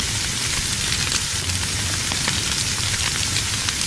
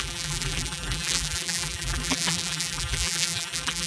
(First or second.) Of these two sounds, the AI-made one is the second